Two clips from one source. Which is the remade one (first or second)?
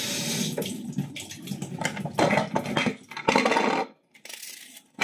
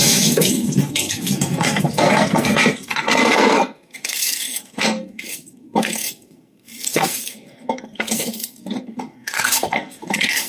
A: second